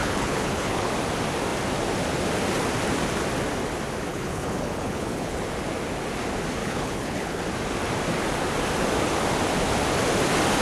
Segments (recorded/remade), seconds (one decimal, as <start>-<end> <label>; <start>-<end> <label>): 0.0-0.9 remade; 0.9-4.1 recorded; 4.1-5.4 remade; 5.4-6.6 recorded; 6.6-7.4 remade; 7.4-10.6 recorded